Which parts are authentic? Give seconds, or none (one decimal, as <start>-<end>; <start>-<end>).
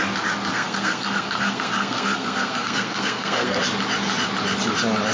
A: 0.0-0.5; 3.6-5.1